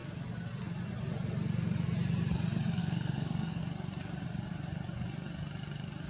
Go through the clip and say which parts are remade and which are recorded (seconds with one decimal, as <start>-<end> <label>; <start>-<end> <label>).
0.0-2.8 recorded; 2.8-3.6 remade; 3.6-6.1 recorded